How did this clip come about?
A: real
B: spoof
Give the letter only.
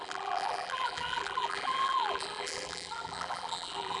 B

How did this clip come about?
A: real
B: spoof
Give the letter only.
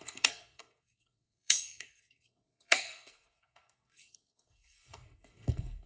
B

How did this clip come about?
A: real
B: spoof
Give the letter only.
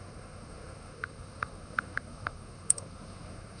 B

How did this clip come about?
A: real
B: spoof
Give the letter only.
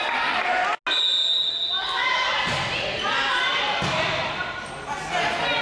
A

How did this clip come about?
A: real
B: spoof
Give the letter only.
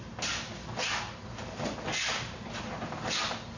A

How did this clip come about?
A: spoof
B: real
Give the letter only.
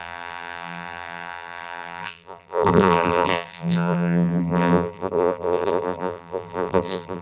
A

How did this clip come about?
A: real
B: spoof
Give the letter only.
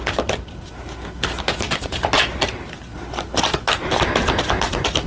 A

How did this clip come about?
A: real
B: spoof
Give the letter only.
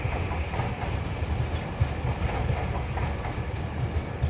A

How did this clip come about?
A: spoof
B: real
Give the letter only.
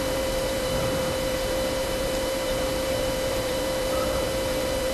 A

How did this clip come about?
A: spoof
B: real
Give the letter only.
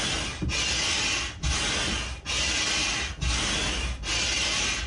B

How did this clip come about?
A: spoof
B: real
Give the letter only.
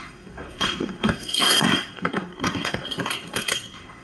A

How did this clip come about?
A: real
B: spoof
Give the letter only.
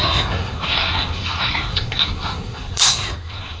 B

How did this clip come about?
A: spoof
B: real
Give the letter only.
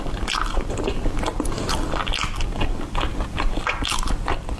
B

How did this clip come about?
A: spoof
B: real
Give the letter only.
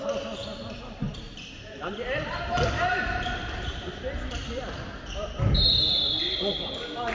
B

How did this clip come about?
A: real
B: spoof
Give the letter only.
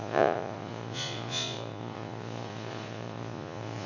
B